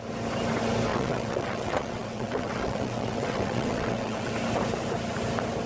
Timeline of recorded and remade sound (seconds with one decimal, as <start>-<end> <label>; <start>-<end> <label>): 0.0-0.9 recorded; 0.9-4.3 remade; 4.3-5.7 recorded